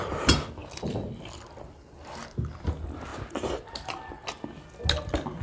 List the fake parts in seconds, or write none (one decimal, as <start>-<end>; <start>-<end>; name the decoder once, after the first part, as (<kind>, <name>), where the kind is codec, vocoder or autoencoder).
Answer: none